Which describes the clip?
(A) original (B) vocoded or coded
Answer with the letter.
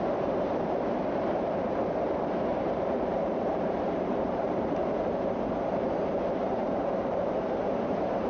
B